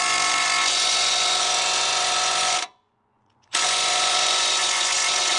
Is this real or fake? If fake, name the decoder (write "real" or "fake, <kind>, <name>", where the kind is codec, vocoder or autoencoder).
fake, vocoder, Vocos